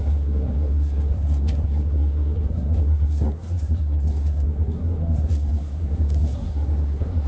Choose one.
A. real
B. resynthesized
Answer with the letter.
B